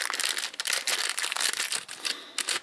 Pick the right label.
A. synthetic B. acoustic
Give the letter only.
B